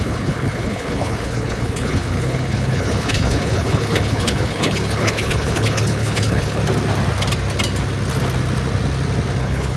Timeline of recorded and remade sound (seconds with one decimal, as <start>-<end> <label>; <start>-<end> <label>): 0.0-6.6 remade; 6.6-9.4 recorded; 9.4-9.8 remade